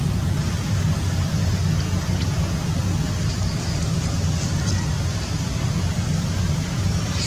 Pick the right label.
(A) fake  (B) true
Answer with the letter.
B